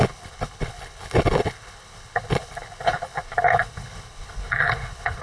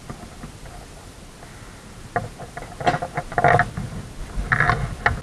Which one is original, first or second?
second